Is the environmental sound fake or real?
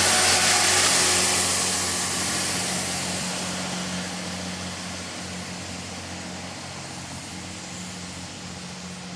real